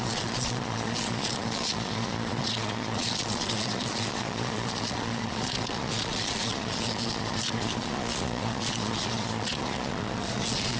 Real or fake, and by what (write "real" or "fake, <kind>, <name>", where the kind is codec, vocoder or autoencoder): fake, vocoder, Vocos